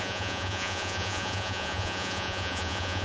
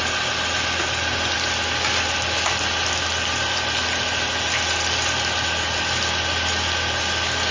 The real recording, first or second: second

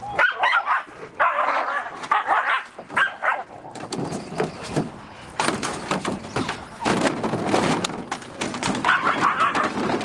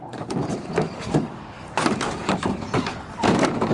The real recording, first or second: first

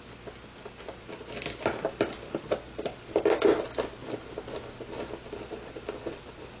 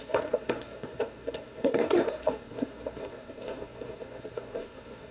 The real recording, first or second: first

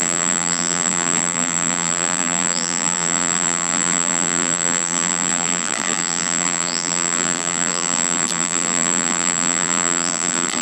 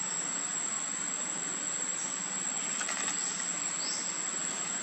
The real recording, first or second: second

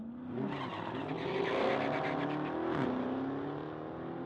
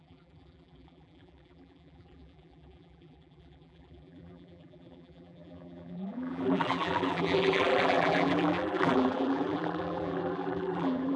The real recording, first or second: first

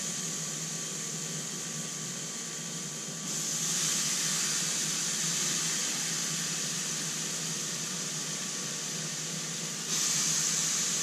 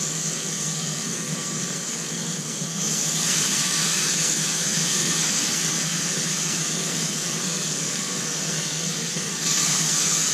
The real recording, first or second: first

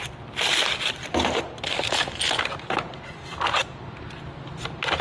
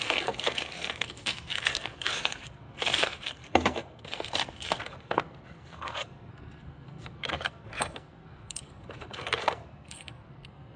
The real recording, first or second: first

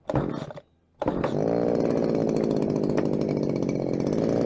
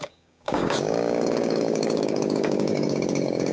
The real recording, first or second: first